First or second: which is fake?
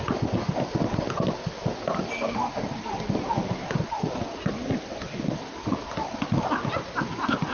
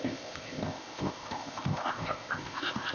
second